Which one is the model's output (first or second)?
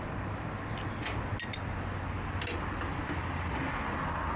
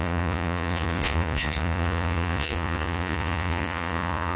second